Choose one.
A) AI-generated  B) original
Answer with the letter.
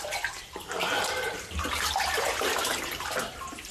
A